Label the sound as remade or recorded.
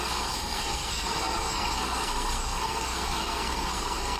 remade